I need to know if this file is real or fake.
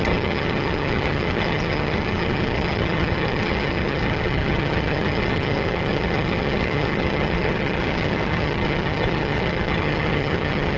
fake